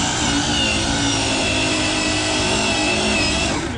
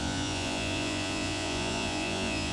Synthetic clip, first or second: second